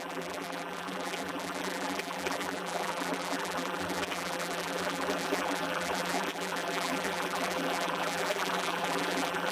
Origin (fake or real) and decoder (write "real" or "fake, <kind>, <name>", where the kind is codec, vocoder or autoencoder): fake, vocoder, BigVGAN v2